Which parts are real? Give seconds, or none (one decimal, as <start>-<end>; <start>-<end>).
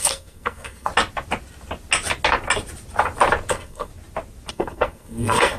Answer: 0.9-3.5; 3.9-4.5